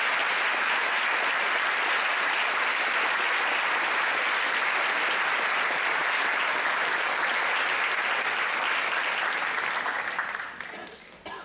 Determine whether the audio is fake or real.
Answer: real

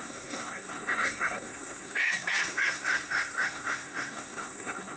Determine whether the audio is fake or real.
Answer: fake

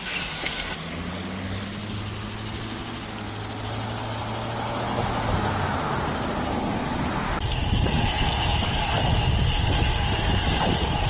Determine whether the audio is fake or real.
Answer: real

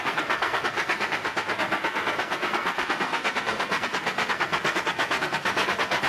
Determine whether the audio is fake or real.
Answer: fake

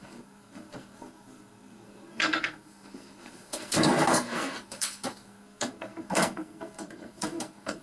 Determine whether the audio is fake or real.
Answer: fake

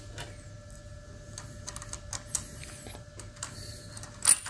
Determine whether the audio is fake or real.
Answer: real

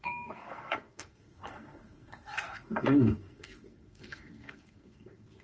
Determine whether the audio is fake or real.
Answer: fake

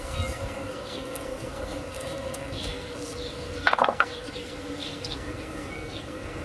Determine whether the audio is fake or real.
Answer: fake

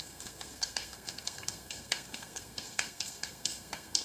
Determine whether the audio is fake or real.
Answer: fake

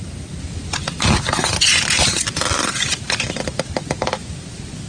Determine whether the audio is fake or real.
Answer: real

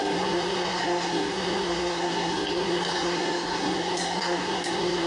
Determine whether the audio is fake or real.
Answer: fake